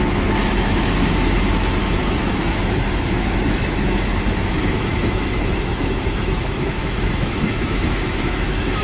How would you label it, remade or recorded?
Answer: remade